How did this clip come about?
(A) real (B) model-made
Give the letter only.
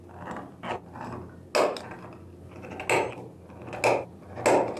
A